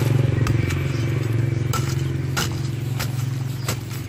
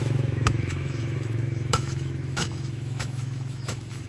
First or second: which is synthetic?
second